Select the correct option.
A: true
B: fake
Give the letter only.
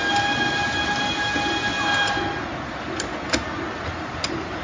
A